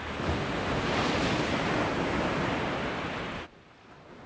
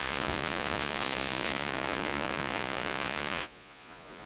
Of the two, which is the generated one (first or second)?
second